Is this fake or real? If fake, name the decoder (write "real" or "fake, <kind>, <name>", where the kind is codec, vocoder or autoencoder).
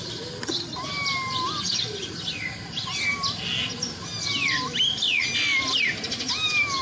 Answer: real